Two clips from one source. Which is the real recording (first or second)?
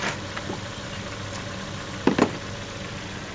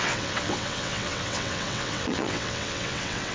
first